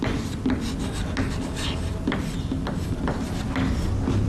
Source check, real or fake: real